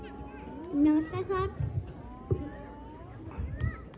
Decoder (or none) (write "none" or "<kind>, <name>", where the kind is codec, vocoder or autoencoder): none